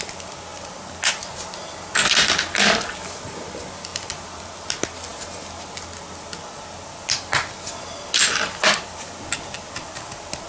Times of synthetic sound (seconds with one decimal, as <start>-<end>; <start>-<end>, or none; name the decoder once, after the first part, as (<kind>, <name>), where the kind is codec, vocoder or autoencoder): none